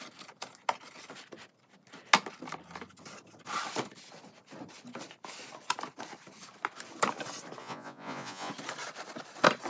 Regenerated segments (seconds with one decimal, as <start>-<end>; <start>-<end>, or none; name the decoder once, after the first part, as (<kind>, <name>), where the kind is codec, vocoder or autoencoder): 7.6-8.5 (vocoder, Vocos)